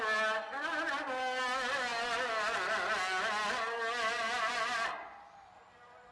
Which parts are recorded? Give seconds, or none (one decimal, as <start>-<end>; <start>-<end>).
0.0-6.1